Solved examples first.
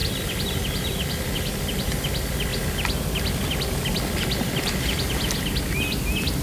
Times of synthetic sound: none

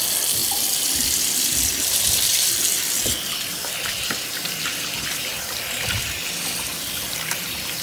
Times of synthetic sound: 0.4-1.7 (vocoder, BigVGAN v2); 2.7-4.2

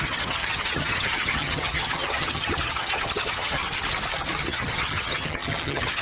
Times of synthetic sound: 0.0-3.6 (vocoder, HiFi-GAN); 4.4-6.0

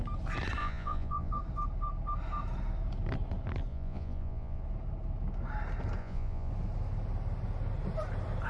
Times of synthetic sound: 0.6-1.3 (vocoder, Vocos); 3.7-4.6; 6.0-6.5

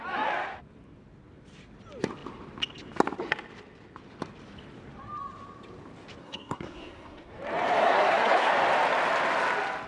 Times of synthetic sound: 6.2-7.3 (codec, SNAC); 7.8-8.5